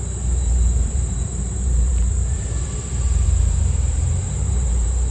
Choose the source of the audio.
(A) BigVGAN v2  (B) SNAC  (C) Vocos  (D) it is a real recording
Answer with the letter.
A